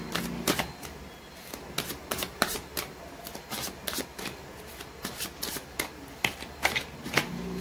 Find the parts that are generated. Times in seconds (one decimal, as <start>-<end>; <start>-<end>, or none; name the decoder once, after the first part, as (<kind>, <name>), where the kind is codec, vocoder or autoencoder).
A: 2.0-2.9 (vocoder, BigVGAN v2)